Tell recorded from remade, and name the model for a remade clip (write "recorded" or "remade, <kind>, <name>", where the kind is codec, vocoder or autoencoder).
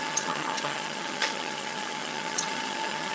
remade, vocoder, HiFi-GAN